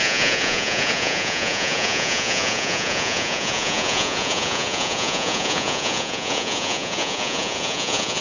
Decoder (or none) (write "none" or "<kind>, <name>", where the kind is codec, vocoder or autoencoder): vocoder, Vocos